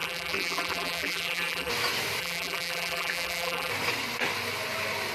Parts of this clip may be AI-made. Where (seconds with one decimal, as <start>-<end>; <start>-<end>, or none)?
0.0-1.7; 2.2-3.7